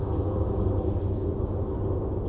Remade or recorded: recorded